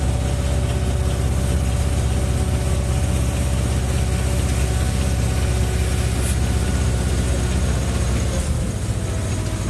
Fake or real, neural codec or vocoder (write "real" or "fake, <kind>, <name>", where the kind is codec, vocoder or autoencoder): real